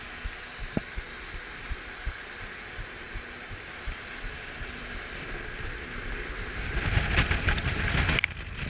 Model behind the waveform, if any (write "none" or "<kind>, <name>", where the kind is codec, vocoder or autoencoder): none